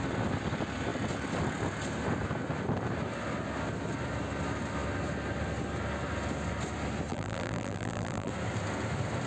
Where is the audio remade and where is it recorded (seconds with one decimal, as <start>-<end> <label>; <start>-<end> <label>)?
0.0-7.1 recorded; 7.1-8.3 remade; 8.3-9.3 recorded